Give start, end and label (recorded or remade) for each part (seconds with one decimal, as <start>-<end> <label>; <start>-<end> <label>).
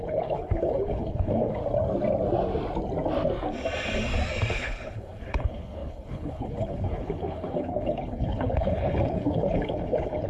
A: 0.0-1.6 remade; 1.6-4.5 recorded; 4.5-10.3 remade